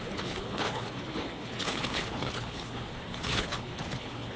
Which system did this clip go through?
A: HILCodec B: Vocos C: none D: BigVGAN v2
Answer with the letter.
A